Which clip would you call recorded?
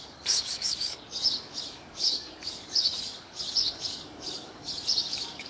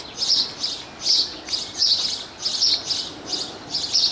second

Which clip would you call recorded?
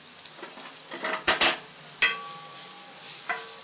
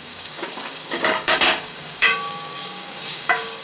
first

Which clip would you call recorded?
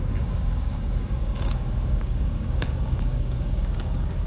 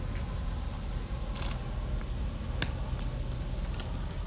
second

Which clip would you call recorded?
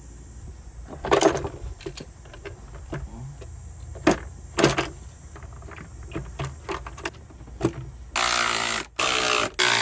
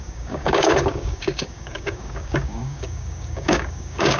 first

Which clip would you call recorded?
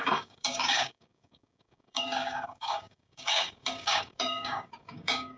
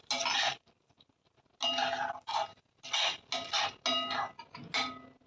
second